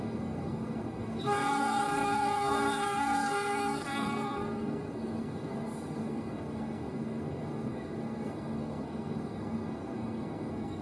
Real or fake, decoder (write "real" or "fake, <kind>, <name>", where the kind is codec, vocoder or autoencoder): fake, codec, SNAC